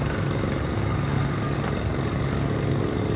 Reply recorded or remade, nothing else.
remade